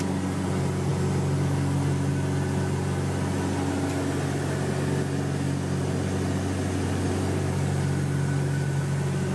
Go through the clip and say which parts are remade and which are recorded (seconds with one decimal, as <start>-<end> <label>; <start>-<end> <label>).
0.0-9.3 recorded